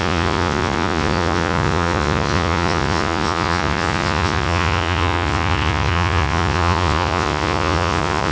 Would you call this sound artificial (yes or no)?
yes